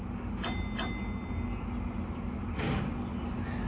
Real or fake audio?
real